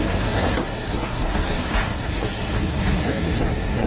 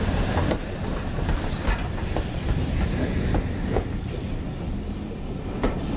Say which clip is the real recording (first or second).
second